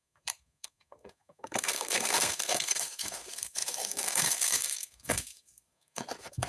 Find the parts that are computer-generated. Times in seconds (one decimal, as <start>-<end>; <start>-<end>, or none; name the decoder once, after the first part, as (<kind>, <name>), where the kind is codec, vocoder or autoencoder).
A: 0.0-6.5 (codec, SNAC)